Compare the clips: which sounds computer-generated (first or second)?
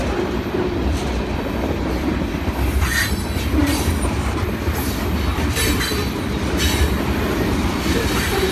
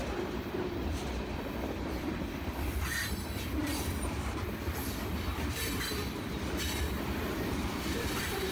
second